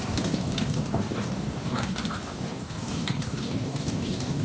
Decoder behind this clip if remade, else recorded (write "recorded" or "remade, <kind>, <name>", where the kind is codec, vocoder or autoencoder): remade, codec, DAC